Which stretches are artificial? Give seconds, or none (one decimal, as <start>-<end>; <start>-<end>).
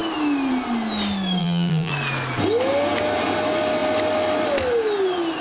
1.4-1.9